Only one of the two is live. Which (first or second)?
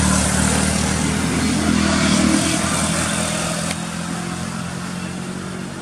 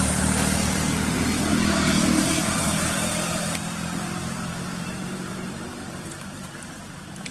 first